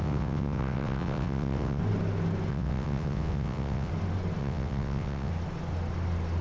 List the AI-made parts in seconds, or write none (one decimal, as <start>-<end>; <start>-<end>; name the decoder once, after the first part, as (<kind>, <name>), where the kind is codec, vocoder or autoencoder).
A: 0.0-1.8 (vocoder, WaveNeXt); 2.5-3.9; 4.4-5.3